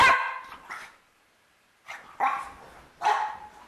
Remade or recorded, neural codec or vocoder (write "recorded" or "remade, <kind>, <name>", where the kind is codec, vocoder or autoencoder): recorded